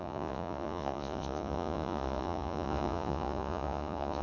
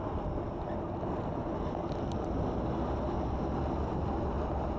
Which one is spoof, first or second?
first